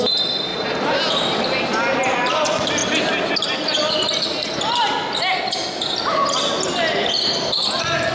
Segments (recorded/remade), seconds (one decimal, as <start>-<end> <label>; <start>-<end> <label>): 0.0-8.1 recorded